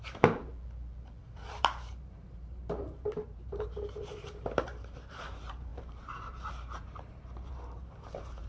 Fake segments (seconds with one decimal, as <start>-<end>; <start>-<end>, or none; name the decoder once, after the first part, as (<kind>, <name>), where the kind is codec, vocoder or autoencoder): 0.0-0.5 (vocoder, BigVGAN v2); 1.2-8.5